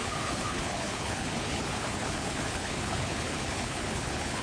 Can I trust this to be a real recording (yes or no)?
no